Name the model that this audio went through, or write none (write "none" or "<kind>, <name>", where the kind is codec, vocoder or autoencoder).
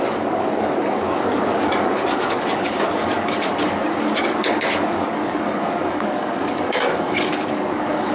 codec, DAC